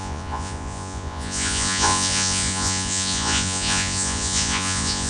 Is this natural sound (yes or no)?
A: no